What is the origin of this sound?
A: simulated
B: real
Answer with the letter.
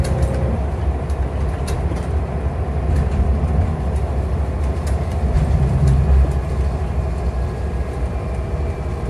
B